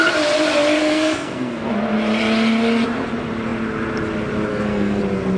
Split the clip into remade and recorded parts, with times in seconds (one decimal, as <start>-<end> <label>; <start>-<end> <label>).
0.0-0.8 recorded; 0.8-1.7 remade; 1.7-4.5 recorded; 4.5-5.0 remade; 5.0-5.4 recorded